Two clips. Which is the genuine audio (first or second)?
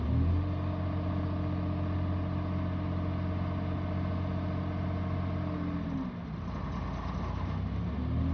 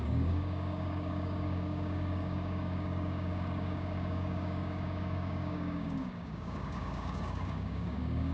first